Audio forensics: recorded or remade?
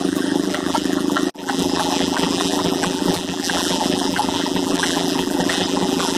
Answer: remade